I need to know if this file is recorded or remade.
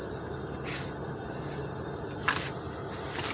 recorded